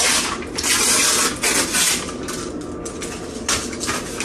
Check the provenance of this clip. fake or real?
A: real